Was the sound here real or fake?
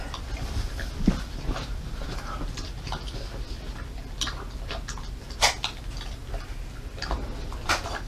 real